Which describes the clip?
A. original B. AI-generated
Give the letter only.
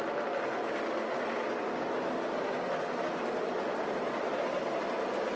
A